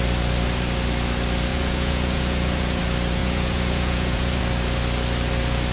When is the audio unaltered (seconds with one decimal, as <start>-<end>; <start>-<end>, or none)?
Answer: 0.0-1.5; 2.8-3.2; 4.4-5.7